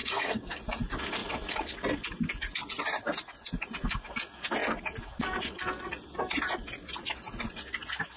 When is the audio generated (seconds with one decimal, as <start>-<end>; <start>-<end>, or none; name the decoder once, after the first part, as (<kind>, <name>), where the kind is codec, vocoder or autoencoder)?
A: 0.0-0.6 (codec, DAC)